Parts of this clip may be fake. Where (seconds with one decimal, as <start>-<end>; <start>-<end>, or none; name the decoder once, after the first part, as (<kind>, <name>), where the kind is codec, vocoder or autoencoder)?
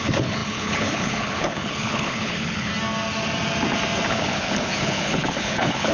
0.0-2.7 (codec, HILCodec); 4.1-5.9